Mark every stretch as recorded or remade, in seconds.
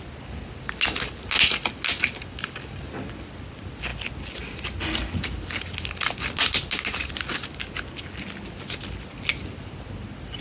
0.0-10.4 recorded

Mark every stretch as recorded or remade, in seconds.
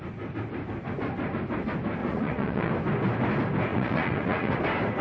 0.0-2.0 recorded; 2.0-2.7 remade; 2.7-3.7 recorded; 3.7-4.6 remade; 4.6-5.0 recorded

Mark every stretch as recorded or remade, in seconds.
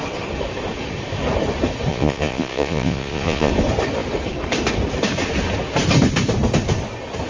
0.0-1.9 recorded; 1.9-3.5 remade; 3.5-7.3 recorded